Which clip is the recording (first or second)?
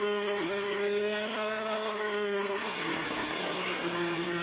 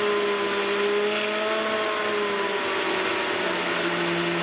second